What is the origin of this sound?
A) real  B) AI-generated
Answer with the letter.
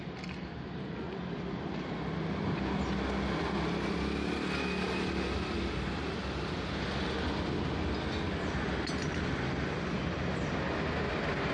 A